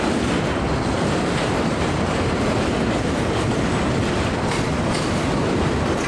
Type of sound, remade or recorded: remade